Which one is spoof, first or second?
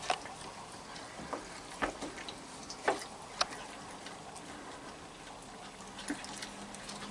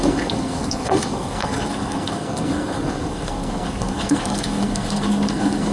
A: second